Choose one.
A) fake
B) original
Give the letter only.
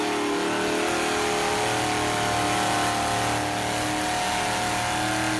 B